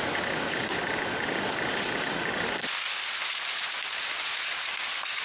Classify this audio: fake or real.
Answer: real